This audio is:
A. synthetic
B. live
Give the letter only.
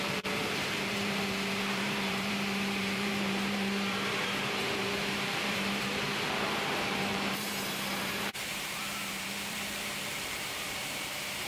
A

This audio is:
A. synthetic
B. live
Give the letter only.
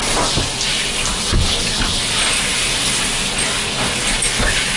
B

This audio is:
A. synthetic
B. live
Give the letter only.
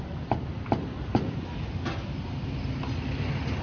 B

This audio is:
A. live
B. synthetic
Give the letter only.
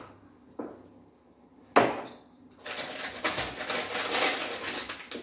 A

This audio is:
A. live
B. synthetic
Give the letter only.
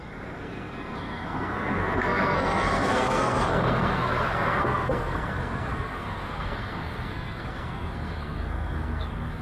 B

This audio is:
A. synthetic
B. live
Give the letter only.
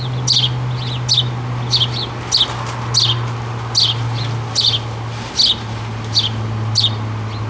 B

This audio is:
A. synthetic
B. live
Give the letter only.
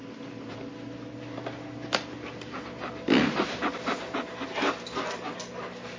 B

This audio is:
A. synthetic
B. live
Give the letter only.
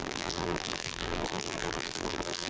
A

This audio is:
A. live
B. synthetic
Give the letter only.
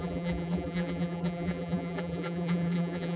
B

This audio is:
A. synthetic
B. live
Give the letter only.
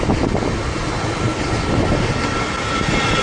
A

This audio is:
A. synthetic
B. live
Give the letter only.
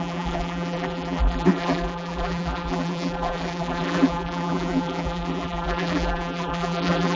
A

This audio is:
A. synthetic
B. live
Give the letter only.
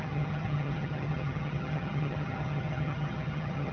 A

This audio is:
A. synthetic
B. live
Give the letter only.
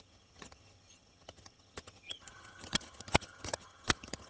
A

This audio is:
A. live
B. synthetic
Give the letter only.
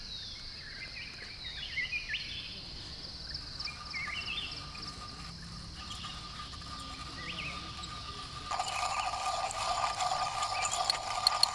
A